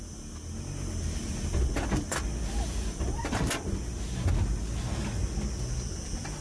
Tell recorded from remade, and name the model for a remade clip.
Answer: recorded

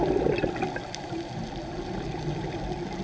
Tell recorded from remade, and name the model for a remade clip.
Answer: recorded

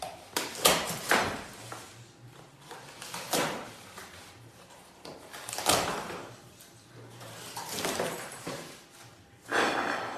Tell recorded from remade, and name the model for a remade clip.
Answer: remade, vocoder, BigVGAN v2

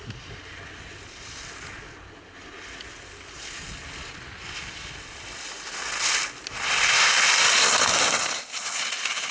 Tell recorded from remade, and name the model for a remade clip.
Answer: recorded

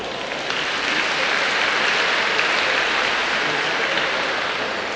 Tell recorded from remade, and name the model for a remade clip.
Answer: recorded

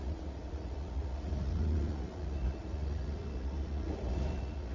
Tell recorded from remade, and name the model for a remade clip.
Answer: remade, vocoder, Vocos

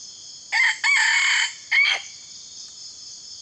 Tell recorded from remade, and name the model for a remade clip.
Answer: recorded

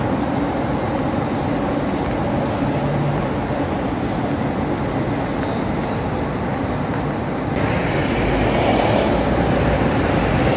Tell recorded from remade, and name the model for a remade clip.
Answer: recorded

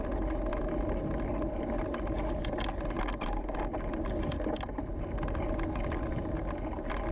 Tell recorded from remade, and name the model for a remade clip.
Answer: recorded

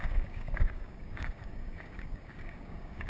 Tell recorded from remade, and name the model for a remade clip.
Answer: remade, codec, DAC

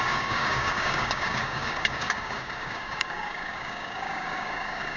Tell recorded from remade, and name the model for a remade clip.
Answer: remade, codec, DAC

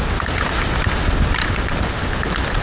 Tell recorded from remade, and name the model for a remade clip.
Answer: recorded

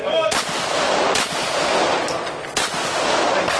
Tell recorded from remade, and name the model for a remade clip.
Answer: recorded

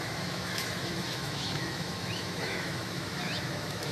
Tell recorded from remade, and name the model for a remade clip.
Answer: remade, autoencoder, DAC-VAE